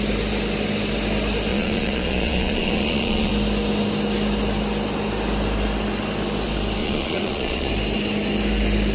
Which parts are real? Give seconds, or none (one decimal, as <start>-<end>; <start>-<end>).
0.0-1.5; 3.3-6.8; 7.7-8.9